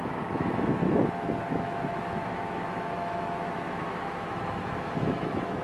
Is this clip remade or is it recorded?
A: remade